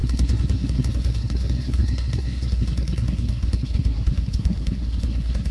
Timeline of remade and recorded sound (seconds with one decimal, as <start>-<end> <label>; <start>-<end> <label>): 0.0-5.5 remade